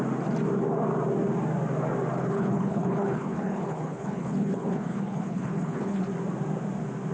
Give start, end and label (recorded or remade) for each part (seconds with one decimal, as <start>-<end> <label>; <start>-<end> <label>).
0.0-2.2 recorded; 2.2-6.0 remade; 6.0-7.1 recorded